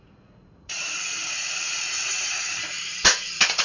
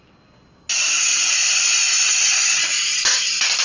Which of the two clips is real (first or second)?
second